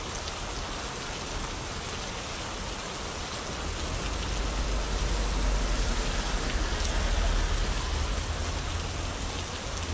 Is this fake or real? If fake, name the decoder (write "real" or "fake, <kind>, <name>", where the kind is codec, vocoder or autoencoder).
real